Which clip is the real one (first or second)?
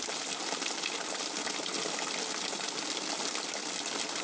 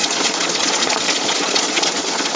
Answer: first